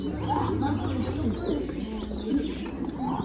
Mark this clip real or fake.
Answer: real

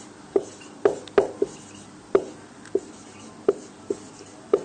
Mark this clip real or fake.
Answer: real